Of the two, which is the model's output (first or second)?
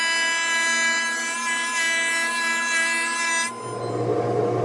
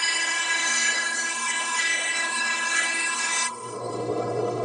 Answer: second